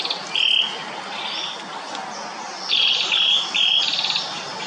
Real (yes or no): yes